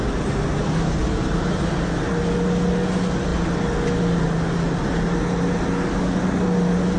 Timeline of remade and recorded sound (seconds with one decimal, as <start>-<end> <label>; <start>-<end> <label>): 0.0-7.0 recorded